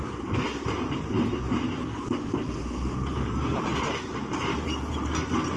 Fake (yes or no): yes